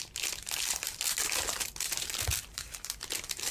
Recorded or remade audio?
remade